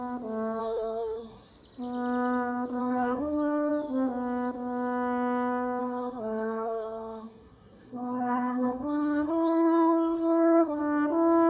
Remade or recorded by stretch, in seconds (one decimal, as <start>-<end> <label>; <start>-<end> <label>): 0.0-0.6 recorded; 0.6-1.5 remade; 1.5-2.8 recorded; 2.8-3.7 remade; 3.7-5.8 recorded; 5.8-10.8 remade; 10.8-11.5 recorded